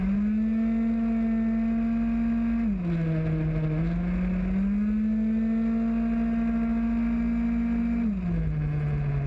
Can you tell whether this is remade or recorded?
recorded